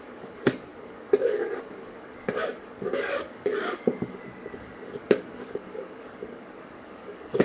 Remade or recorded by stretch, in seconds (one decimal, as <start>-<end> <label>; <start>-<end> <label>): 0.0-7.4 remade

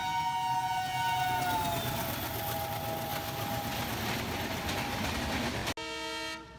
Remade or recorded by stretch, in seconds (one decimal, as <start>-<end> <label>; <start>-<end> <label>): 0.0-6.6 recorded

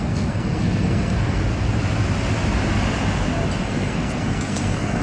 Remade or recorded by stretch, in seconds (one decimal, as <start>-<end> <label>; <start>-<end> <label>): 0.0-1.4 remade; 1.4-3.6 recorded; 3.6-5.0 remade

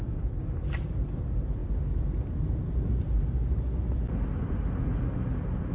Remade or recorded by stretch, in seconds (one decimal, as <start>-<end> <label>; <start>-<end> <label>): 0.0-5.7 recorded

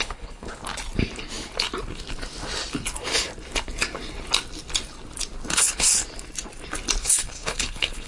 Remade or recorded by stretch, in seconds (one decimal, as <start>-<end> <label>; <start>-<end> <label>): 0.0-0.6 remade; 0.6-5.5 recorded; 5.5-6.0 remade; 6.0-7.0 recorded; 7.0-8.1 remade